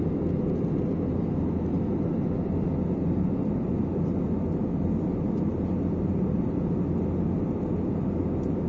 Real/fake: real